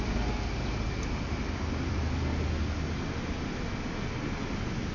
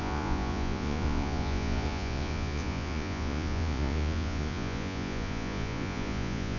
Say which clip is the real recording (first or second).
first